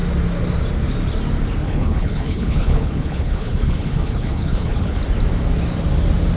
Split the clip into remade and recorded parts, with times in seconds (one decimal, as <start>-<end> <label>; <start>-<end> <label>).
0.0-1.6 recorded; 1.6-5.0 remade; 5.0-6.4 recorded